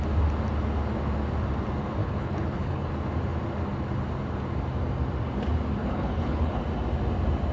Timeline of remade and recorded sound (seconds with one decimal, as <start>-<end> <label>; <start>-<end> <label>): 0.0-2.0 recorded; 2.0-2.9 remade; 2.9-5.8 recorded; 5.8-6.6 remade; 6.6-7.5 recorded